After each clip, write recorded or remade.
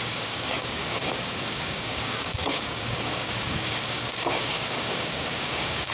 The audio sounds remade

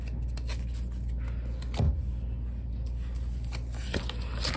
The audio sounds recorded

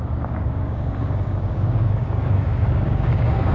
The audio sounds remade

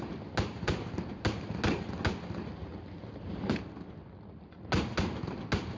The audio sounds recorded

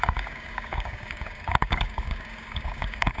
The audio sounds remade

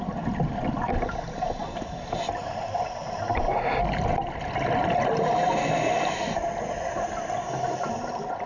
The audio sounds recorded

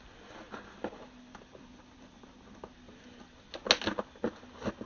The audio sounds recorded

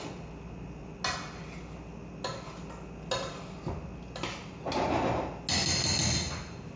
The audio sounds recorded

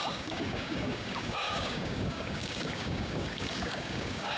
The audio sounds remade